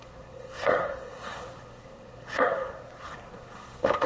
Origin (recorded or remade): remade